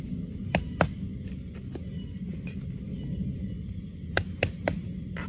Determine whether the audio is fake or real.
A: real